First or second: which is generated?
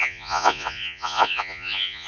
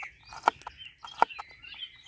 first